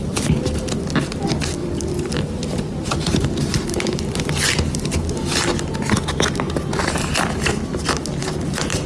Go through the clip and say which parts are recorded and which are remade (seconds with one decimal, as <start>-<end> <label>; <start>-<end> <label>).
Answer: 0.0-1.6 recorded; 1.6-4.0 remade; 4.0-8.2 recorded; 8.2-8.9 remade